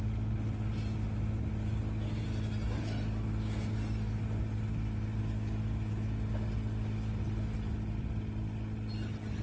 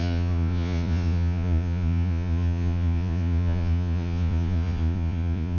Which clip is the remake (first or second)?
second